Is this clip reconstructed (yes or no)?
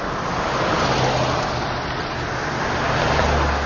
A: no